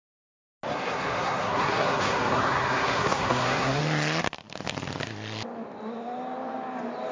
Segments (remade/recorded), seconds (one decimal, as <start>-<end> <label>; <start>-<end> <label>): 0.0-0.7 recorded; 0.7-3.8 remade; 3.8-7.1 recorded